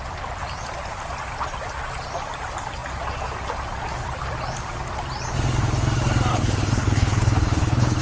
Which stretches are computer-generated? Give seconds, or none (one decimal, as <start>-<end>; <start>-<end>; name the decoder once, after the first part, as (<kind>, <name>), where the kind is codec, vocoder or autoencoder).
6.3-8.0 (codec, HILCodec)